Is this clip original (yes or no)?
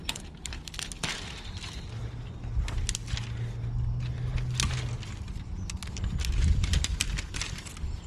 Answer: yes